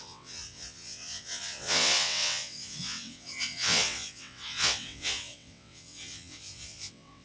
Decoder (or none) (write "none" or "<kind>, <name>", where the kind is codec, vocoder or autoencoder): vocoder, WaveNeXt